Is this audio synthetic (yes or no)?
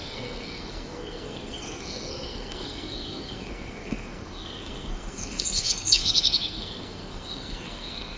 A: yes